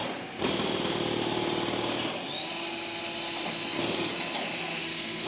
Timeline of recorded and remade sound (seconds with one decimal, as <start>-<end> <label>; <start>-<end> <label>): 0.0-4.4 recorded; 4.4-5.3 remade